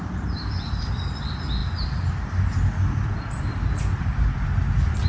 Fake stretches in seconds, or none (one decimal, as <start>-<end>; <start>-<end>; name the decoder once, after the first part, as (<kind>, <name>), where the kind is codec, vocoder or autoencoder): 0.0-5.1 (vocoder, BigVGAN v2)